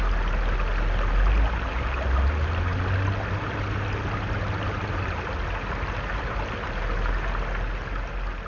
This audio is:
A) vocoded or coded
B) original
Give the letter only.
B